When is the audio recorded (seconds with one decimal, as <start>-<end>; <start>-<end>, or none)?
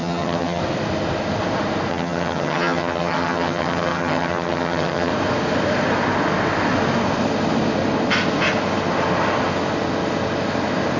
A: 0.6-1.9; 5.1-11.0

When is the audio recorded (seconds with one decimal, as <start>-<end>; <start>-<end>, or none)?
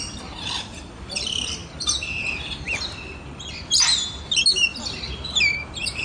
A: 0.0-6.0